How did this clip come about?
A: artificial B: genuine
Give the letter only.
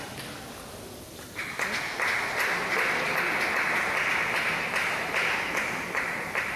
B